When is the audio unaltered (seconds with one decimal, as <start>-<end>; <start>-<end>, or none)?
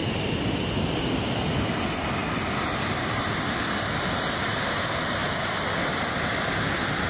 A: 0.0-7.1